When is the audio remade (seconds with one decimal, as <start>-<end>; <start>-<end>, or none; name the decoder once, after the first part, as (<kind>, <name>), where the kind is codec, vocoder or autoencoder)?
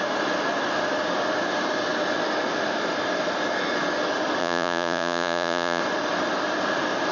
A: 4.4-5.8 (vocoder, Vocos)